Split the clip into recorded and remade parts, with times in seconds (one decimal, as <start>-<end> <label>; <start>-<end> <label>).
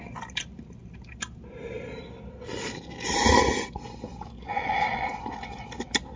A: 0.0-4.5 recorded; 4.5-5.2 remade; 5.2-6.2 recorded